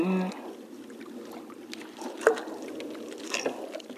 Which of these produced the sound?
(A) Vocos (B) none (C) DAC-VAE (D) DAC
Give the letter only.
B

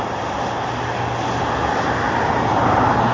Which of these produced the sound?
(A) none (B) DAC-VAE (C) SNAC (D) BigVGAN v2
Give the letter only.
A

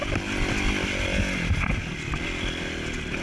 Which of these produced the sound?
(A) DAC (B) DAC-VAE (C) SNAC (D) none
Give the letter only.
D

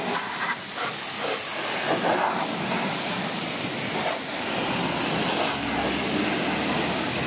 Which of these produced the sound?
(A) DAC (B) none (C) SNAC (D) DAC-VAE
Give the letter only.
B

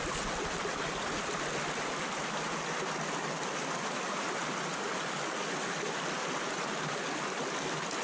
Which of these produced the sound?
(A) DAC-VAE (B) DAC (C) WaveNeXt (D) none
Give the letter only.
D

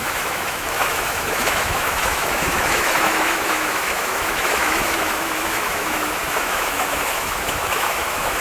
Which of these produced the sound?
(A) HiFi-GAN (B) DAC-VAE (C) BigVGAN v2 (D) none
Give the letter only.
B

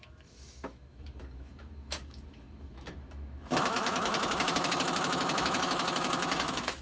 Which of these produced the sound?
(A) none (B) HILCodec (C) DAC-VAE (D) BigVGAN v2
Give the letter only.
C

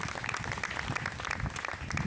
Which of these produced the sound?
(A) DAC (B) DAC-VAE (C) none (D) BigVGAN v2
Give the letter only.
C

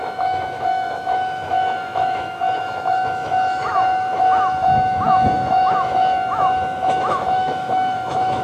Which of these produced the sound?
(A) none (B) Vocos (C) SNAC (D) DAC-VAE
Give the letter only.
D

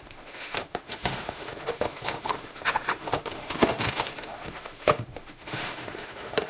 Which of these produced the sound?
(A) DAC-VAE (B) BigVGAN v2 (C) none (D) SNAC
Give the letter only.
A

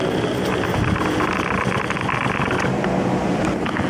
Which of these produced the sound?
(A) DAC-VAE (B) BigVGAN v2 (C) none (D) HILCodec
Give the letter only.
C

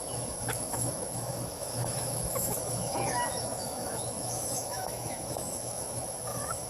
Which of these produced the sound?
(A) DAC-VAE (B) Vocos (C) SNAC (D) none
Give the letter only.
A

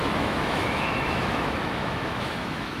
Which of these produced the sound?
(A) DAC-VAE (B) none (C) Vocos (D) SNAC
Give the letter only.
A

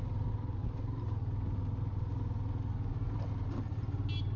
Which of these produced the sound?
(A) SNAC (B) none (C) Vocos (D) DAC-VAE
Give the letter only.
B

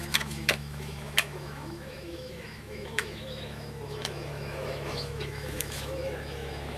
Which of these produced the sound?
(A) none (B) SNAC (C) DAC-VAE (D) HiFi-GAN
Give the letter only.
C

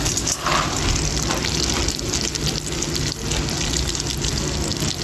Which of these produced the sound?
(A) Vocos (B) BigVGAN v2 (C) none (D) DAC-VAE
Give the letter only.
C